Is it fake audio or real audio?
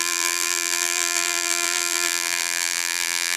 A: fake